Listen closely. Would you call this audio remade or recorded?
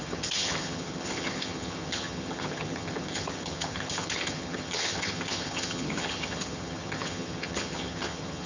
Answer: remade